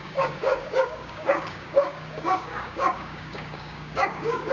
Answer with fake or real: fake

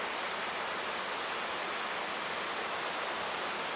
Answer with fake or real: real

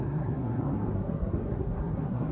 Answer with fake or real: fake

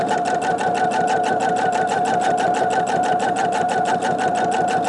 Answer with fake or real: fake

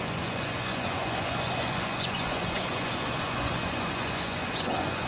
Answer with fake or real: fake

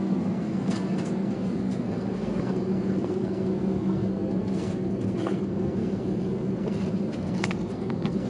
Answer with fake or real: fake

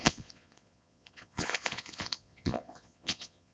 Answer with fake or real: fake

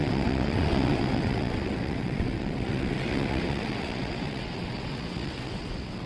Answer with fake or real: fake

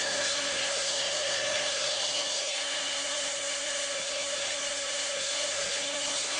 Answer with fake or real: fake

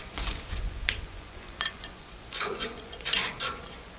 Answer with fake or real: fake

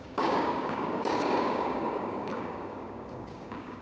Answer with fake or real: fake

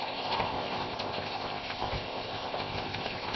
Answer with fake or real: fake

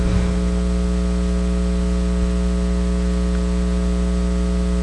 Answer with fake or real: real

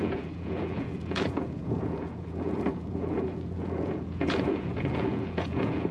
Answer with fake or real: fake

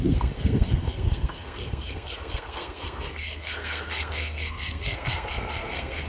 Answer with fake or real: fake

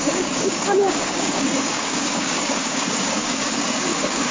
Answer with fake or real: fake